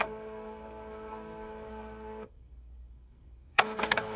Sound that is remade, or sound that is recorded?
remade